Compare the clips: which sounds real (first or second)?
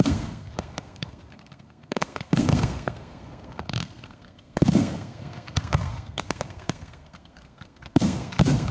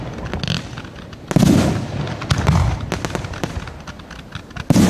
second